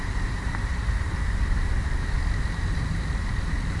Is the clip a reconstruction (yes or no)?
yes